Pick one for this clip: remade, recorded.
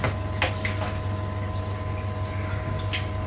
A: recorded